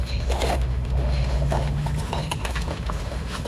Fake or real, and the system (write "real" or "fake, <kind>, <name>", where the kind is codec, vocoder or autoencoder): fake, autoencoder, DAC-VAE